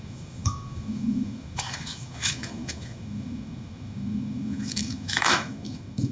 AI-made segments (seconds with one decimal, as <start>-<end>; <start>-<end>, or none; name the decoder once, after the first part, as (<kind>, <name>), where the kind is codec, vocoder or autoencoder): 0.0-6.1 (autoencoder, DAC-VAE)